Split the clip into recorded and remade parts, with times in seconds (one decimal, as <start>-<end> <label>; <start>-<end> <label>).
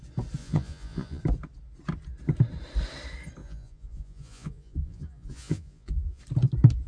0.0-0.4 recorded; 0.4-1.2 remade; 1.2-3.4 recorded; 3.4-6.2 remade; 6.2-6.9 recorded